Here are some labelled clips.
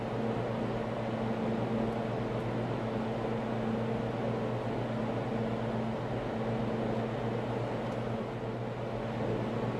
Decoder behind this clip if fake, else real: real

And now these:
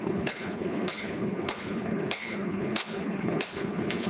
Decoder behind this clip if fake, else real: fake, codec, HILCodec